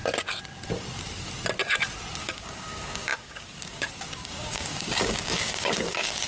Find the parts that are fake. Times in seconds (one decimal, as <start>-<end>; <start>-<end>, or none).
2.2-6.3